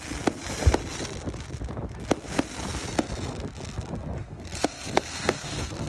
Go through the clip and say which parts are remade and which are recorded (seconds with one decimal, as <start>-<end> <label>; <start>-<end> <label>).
0.0-4.2 recorded; 4.2-5.9 remade